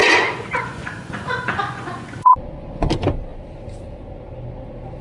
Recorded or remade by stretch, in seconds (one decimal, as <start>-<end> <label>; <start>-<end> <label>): 0.0-2.9 remade; 2.9-5.0 recorded